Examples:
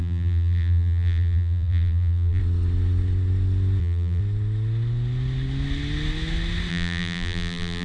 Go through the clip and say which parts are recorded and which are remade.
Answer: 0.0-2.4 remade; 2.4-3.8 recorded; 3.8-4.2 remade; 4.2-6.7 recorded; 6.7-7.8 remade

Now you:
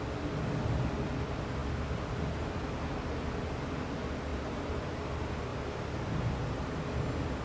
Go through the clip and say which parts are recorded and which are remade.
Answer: 0.0-4.3 recorded; 4.3-4.9 remade; 4.9-5.5 recorded; 5.5-6.7 remade; 6.7-7.4 recorded

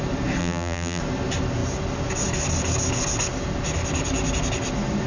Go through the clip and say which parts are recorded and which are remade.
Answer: 0.0-0.4 recorded; 0.4-1.0 remade; 1.0-5.1 recorded

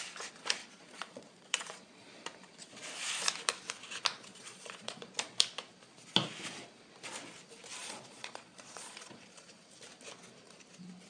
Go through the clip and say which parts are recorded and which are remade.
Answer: 0.0-0.6 recorded; 0.6-2.0 remade; 2.0-4.3 recorded; 4.3-5.1 remade; 5.1-7.8 recorded; 7.8-9.6 remade; 9.6-11.1 recorded

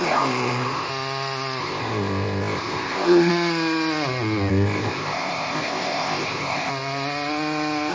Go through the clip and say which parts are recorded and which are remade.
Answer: 0.0-0.9 remade; 0.9-1.6 recorded; 1.6-3.3 remade; 3.3-4.5 recorded; 4.5-6.7 remade; 6.7-7.9 recorded

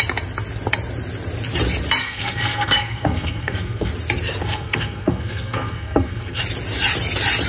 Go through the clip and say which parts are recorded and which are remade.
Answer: 0.0-2.0 recorded; 2.0-3.9 remade; 3.9-4.4 recorded; 4.4-6.4 remade; 6.4-7.5 recorded